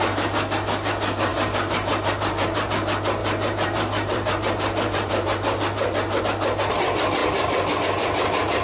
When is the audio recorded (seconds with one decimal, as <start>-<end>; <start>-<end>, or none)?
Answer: 0.0-1.3; 2.7-3.2; 6.2-8.6